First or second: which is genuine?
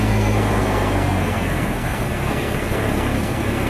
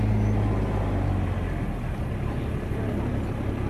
second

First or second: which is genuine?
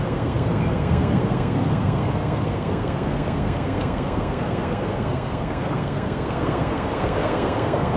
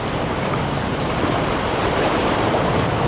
second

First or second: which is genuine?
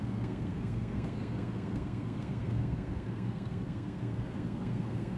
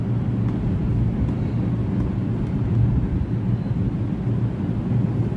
second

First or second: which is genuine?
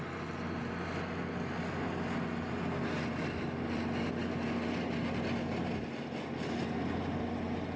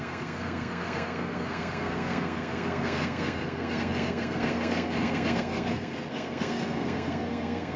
first